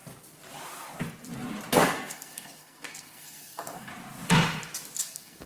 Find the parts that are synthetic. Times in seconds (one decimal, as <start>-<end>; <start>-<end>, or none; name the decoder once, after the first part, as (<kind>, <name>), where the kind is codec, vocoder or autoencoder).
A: 1.7-3.9 (codec, SNAC); 5.0-5.5